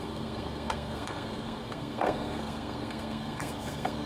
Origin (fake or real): fake